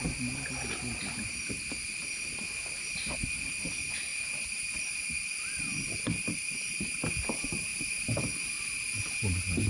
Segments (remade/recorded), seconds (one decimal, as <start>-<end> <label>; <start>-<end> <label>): 0.0-5.7 recorded; 5.7-7.0 remade; 7.0-9.7 recorded